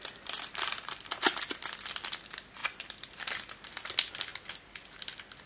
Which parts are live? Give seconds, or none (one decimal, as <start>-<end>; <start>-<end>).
none